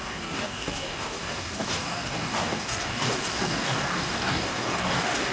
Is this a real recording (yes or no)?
no